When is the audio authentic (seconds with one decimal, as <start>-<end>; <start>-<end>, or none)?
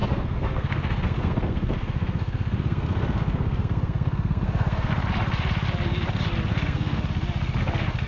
4.9-6.5; 7.0-8.1